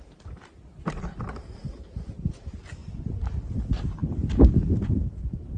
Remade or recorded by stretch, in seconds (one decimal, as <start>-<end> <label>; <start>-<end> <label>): 0.0-4.0 recorded; 4.0-5.6 remade